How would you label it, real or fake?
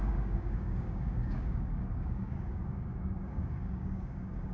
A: fake